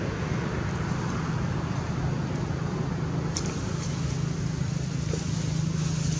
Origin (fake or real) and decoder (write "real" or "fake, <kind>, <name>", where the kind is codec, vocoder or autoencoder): real